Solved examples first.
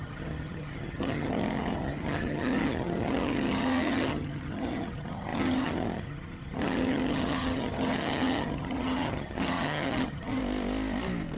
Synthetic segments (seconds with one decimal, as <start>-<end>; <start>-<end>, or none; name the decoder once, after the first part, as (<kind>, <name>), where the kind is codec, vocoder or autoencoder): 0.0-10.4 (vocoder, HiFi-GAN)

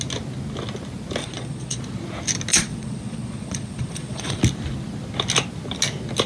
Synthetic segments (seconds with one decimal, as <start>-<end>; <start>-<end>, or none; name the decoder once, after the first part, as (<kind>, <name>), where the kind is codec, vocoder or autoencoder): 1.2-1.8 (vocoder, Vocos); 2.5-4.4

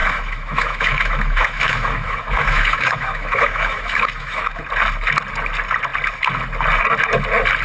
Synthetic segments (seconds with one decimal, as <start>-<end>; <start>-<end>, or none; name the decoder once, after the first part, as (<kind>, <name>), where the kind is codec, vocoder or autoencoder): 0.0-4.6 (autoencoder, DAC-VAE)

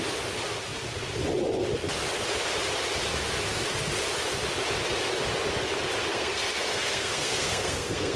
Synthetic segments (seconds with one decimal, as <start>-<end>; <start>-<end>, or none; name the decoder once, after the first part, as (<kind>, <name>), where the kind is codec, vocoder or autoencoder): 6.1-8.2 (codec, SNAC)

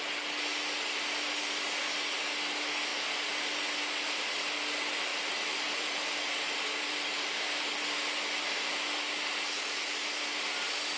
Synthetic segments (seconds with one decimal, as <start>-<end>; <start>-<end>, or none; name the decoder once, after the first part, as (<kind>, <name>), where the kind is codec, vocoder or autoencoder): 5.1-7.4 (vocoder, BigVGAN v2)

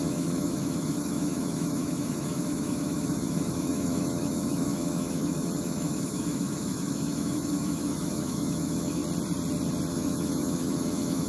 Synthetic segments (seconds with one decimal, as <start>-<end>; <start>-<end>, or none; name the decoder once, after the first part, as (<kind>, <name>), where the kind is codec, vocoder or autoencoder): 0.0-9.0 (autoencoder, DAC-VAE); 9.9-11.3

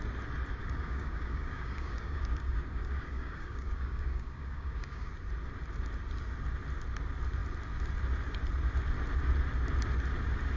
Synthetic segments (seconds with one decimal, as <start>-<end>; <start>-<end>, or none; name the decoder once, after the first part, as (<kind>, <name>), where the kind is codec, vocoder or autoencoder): 0.6-5.1 (codec, DAC)

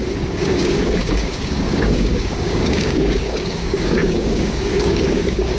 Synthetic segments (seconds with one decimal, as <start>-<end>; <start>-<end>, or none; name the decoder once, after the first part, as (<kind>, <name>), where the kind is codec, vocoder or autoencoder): 0.0-5.6 (codec, DAC)